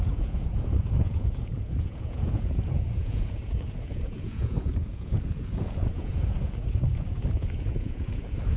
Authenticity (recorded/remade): remade